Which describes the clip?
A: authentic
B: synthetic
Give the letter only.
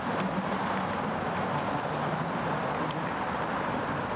A